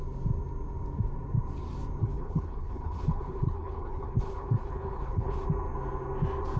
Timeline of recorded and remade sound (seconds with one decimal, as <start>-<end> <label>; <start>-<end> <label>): 0.0-2.0 recorded; 2.0-5.4 remade; 5.4-6.6 recorded